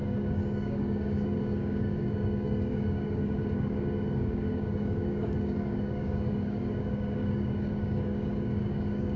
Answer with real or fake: fake